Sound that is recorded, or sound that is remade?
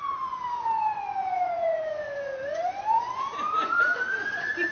remade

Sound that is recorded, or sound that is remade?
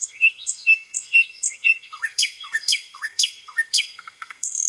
remade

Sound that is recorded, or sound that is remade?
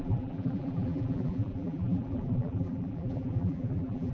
remade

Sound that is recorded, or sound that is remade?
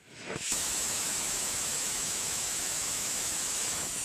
remade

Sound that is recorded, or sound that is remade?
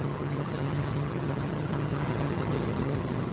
remade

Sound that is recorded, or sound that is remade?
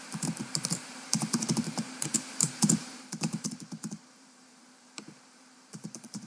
remade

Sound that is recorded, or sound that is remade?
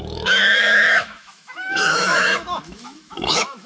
remade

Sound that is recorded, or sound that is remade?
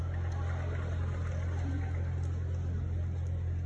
recorded